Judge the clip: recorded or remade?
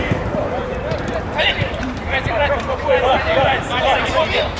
remade